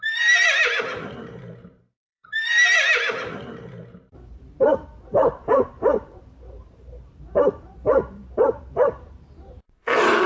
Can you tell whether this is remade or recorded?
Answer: remade